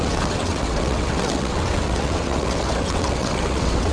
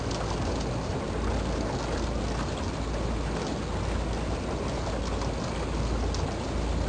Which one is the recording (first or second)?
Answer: second